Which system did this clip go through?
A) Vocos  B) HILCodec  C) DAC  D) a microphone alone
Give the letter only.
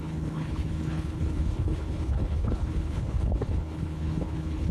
B